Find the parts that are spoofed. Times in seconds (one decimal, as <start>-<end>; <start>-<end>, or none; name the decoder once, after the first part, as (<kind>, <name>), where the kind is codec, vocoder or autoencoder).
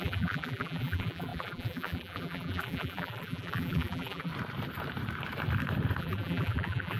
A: 0.0-4.3 (vocoder, BigVGAN v2); 6.0-7.0